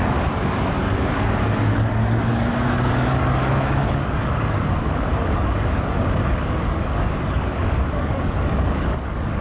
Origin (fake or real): fake